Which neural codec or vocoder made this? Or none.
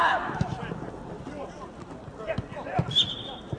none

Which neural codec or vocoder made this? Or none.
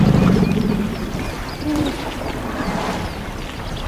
none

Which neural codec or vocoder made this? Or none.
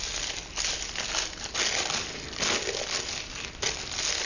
none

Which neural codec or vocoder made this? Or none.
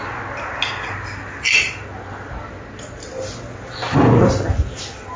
none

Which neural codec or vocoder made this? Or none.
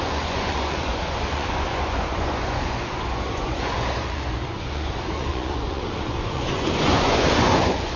vocoder, Vocos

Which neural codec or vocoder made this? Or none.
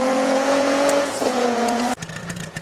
vocoder, Vocos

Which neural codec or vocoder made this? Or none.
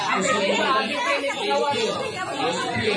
vocoder, Vocos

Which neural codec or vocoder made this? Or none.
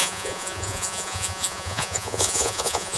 vocoder, Vocos